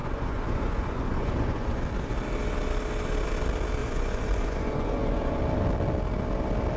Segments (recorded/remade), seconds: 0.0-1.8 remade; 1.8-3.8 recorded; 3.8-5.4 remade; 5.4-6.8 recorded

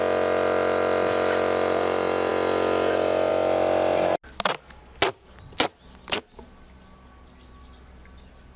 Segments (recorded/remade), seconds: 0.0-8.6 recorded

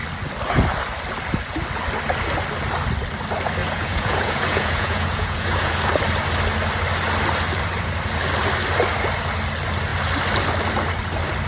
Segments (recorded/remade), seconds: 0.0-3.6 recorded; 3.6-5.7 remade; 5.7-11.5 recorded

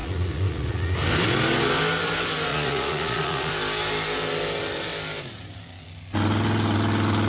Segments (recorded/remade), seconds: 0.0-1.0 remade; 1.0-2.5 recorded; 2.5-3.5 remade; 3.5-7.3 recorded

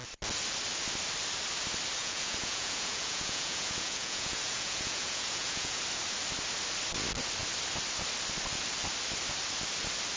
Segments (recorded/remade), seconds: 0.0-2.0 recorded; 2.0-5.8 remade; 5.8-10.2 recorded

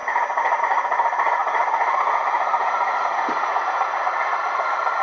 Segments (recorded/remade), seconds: 0.0-0.6 recorded; 0.6-5.0 remade

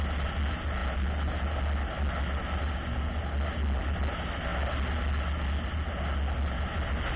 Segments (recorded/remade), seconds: 0.0-7.2 recorded